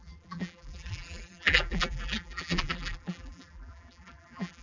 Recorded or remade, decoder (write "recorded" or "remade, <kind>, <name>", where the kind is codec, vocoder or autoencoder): remade, vocoder, BigVGAN v2